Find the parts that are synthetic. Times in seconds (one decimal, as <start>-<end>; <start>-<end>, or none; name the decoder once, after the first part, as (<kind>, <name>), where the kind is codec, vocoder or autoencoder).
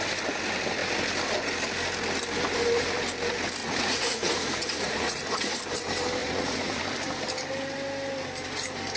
3.6-5.6 (vocoder, Vocos); 6.2-6.8